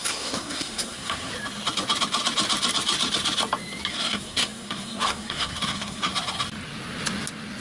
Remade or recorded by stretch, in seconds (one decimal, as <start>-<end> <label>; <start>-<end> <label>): 0.0-1.3 remade; 1.3-3.9 recorded; 3.9-6.1 remade; 6.1-7.6 recorded